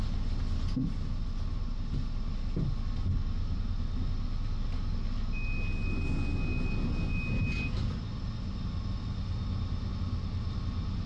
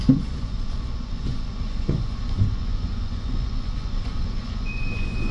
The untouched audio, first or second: first